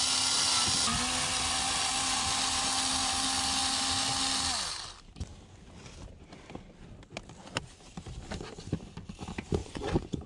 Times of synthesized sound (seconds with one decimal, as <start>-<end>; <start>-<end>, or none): 9.6-10.3